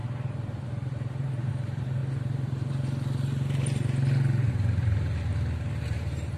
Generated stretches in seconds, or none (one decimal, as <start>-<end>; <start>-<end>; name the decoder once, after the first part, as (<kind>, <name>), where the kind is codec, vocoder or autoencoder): 0.0-2.0 (vocoder, BigVGAN v2); 4.5-5.3; 5.9-6.4